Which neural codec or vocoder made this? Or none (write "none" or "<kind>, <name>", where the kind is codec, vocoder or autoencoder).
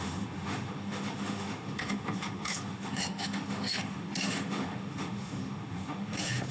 autoencoder, DAC-VAE